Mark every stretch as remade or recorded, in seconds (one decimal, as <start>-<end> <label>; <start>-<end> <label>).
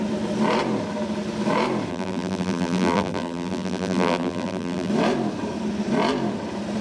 0.0-1.9 recorded; 1.9-4.9 remade; 4.9-6.8 recorded